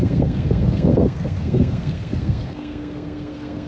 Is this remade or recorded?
remade